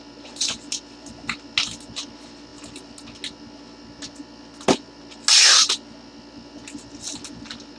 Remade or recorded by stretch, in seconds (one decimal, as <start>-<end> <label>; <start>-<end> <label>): 0.0-7.8 recorded

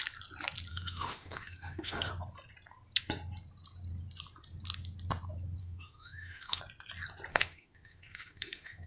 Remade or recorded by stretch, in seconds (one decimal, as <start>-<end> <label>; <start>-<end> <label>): 0.0-0.7 recorded; 0.7-2.1 remade; 2.1-5.6 recorded; 5.6-6.6 remade; 6.6-7.3 recorded; 7.3-8.9 remade

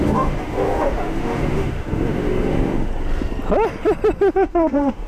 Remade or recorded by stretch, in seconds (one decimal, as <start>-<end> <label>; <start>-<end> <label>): 0.0-2.9 remade; 2.9-4.3 recorded; 4.3-5.1 remade